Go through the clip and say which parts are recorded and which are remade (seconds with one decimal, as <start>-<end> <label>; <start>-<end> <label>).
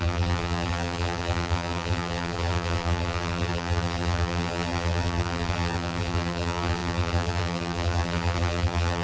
0.0-9.0 remade